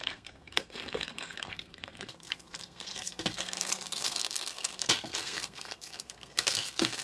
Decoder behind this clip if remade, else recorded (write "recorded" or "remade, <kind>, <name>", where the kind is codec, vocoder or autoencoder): remade, codec, SNAC